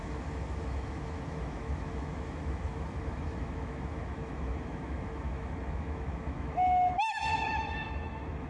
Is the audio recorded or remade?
remade